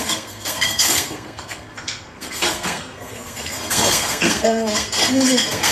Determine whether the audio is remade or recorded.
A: remade